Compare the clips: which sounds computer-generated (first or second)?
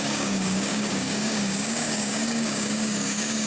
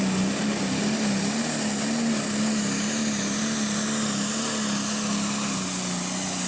first